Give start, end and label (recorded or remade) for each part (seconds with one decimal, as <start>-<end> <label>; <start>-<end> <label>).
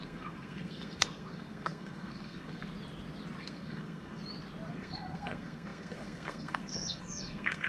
0.0-2.6 remade; 2.6-3.4 recorded; 3.4-4.2 remade; 4.2-4.7 recorded; 4.7-7.7 remade